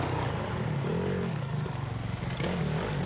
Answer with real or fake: fake